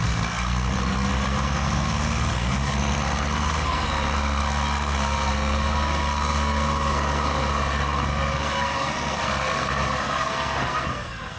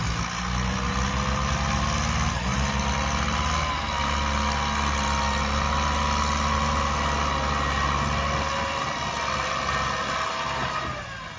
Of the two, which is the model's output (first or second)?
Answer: first